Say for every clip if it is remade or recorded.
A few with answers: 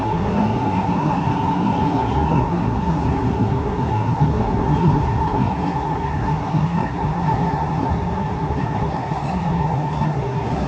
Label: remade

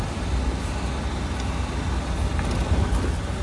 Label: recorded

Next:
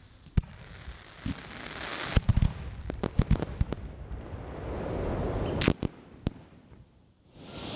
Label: recorded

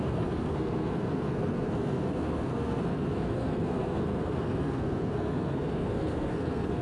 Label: remade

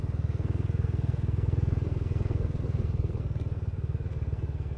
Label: remade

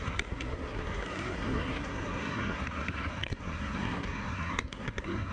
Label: remade